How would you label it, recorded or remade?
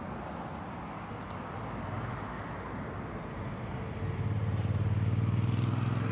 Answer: recorded